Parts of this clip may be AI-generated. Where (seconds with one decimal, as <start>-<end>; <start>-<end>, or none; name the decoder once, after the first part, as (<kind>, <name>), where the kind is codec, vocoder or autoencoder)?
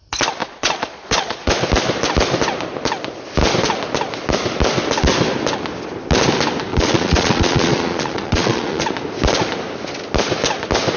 0.4-1.5 (vocoder, Vocos); 6.7-8.9